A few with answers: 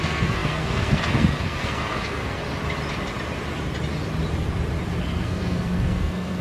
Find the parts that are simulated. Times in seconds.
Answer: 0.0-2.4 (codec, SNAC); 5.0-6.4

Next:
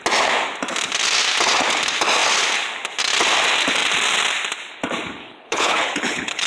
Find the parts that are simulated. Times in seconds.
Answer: 5.2-6.5 (codec, HILCodec)

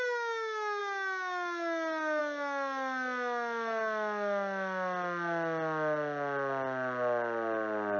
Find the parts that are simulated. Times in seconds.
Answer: none

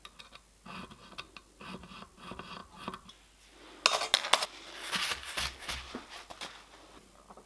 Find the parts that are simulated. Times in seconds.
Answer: none

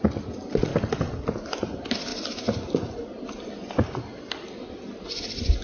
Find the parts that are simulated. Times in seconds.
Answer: none

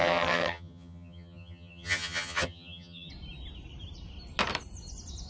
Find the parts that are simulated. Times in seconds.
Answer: 0.0-3.1 (vocoder, HiFi-GAN)

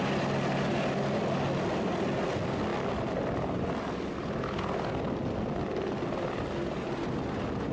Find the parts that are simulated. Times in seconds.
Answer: none